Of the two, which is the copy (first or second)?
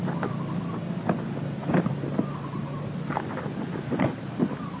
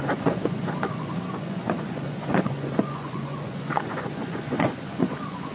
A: second